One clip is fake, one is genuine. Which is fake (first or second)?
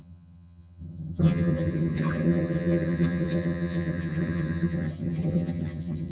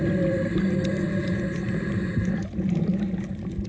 first